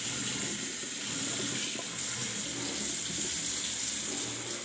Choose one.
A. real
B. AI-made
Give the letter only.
A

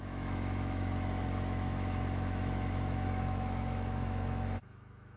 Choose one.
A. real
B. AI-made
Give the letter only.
B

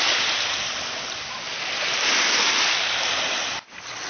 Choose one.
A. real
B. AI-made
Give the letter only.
A